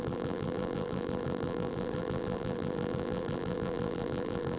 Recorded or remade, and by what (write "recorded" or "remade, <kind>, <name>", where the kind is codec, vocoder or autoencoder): remade, vocoder, BigVGAN v2